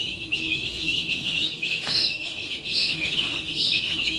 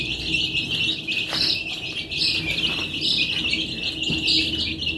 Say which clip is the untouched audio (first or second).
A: second